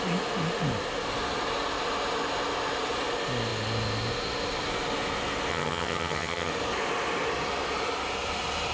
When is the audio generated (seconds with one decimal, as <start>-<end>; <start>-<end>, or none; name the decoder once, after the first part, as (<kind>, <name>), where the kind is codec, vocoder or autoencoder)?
5.5-6.5 (vocoder, HiFi-GAN)